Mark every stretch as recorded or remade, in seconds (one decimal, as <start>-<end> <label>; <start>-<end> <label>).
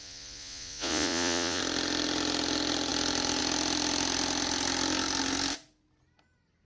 0.0-1.6 remade; 1.6-6.6 recorded